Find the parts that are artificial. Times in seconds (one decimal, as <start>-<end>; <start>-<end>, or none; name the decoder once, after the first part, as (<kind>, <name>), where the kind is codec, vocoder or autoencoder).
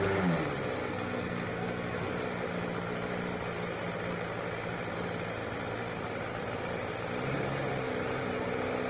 0.8-2.1 (codec, SNAC)